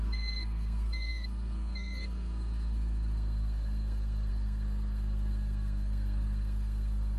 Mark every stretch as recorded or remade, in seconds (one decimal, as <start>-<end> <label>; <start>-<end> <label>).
0.0-7.2 remade